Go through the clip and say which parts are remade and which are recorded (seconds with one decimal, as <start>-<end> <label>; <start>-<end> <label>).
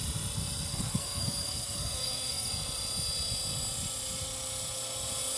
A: 0.0-0.7 recorded; 0.7-2.5 remade; 2.5-5.4 recorded